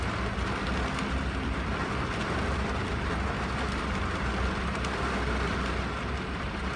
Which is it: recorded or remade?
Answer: recorded